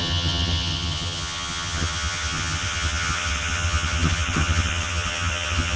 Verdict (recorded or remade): remade